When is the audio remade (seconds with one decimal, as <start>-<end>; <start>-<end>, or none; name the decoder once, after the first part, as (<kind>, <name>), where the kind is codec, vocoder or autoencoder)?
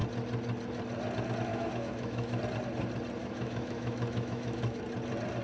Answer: 1.5-2.4 (autoencoder, DAC-VAE); 3.2-4.8